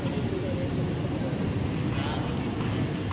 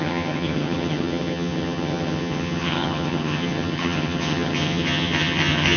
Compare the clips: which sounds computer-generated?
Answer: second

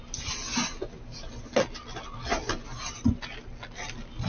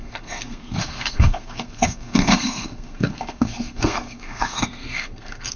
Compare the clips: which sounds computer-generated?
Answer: second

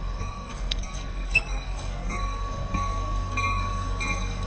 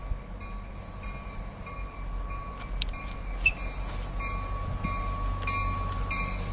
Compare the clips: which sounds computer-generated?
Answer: first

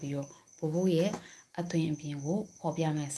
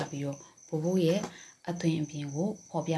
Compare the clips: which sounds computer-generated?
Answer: first